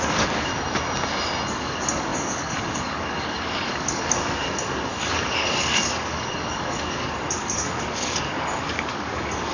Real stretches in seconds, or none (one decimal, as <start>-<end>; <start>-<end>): 0.5-1.5